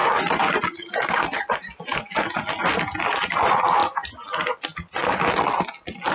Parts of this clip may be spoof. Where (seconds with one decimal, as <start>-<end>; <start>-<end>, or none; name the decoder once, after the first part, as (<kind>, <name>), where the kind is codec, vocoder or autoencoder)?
none